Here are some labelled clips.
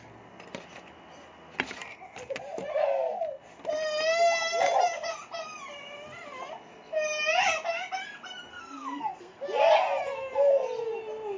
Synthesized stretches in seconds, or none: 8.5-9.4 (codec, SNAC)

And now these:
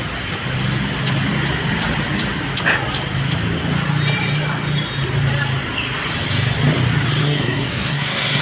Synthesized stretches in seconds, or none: 7.2-8.4 (codec, SNAC)

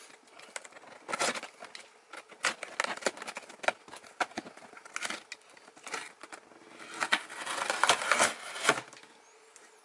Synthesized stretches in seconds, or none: none

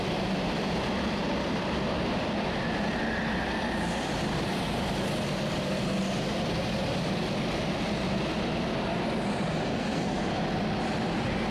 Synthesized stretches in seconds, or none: 9.7-10.3 (codec, SNAC)

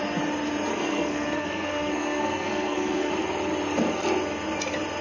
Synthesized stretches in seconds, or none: 0.7-3.1 (codec, SNAC)

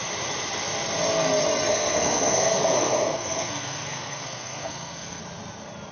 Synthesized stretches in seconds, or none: 1.7-5.2 (codec, SNAC)

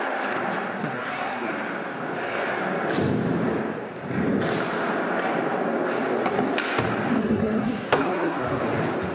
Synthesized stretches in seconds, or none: 0.8-1.5 (codec, SNAC); 7.2-8.6